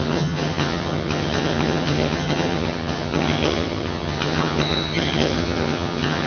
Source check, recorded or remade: remade